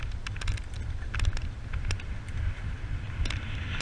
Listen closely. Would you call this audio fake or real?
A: real